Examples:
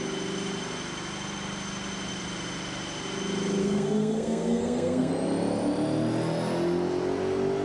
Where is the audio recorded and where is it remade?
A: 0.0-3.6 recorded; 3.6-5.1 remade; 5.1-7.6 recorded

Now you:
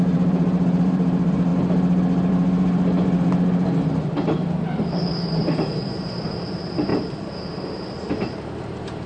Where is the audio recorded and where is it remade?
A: 0.0-1.5 remade; 1.5-2.3 recorded; 2.3-9.1 remade

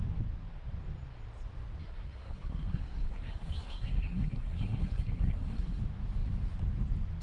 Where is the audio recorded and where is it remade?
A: 0.0-1.8 recorded; 1.8-5.8 remade; 5.8-7.2 recorded

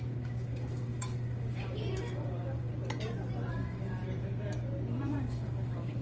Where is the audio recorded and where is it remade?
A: 0.0-2.7 remade; 2.7-3.5 recorded; 3.5-4.0 remade; 4.0-5.1 recorded; 5.1-6.0 remade